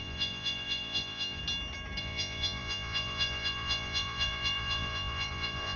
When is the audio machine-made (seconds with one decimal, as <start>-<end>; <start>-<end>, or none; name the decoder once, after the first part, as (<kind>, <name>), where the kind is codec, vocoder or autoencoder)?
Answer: 0.0-1.4 (vocoder, Vocos); 2.0-5.8